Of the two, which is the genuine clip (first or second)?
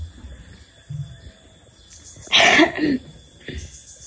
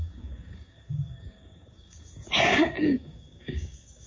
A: first